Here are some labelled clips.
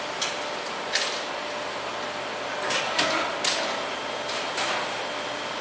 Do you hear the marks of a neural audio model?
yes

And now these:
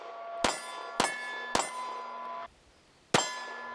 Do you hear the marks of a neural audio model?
no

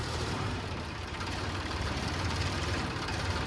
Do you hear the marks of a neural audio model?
yes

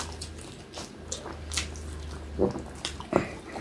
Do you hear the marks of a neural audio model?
no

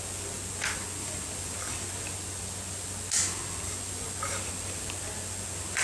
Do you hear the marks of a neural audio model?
no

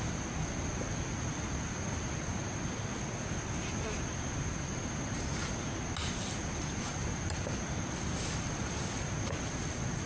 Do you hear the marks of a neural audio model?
no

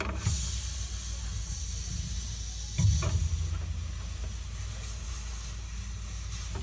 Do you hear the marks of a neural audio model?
no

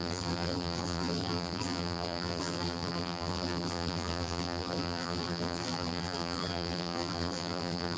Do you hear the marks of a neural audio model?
yes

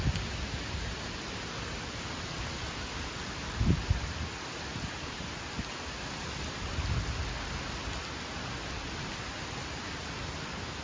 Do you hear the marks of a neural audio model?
no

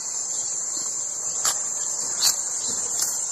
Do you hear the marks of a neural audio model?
yes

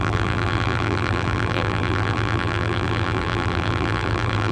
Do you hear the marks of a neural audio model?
yes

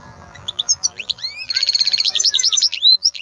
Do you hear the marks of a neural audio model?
yes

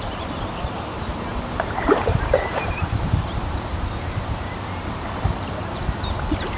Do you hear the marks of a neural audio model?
yes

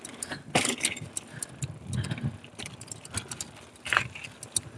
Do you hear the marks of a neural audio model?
no